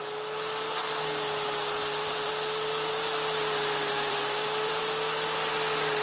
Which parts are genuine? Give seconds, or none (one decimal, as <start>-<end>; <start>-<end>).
0.0-1.8; 4.8-6.0